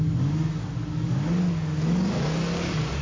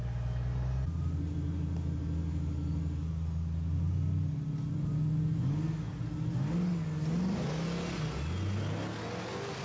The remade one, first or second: first